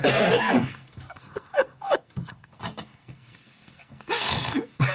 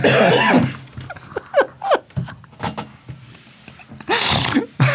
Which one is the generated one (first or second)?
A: first